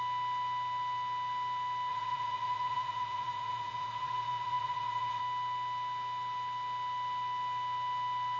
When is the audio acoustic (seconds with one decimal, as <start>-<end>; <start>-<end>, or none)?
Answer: 0.0-1.9; 5.2-8.4